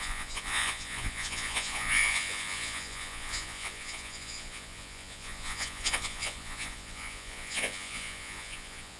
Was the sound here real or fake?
fake